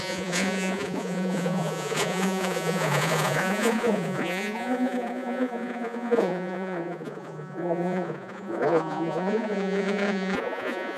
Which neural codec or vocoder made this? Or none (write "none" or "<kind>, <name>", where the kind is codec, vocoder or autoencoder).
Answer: vocoder, Vocos